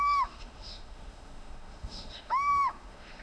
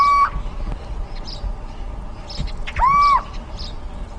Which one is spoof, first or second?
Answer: first